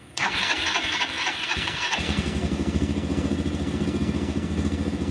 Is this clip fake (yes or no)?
yes